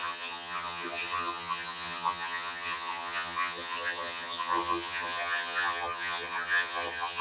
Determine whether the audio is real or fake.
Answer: fake